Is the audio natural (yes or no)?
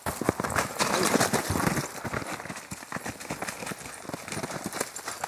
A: yes